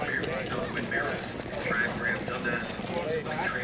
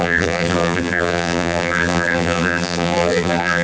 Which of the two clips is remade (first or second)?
second